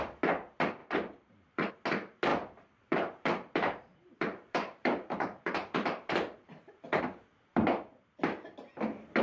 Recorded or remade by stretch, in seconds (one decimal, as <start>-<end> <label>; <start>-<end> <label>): 0.0-0.8 recorded; 0.8-1.7 remade; 1.7-2.3 recorded; 2.3-7.0 remade; 7.0-9.2 recorded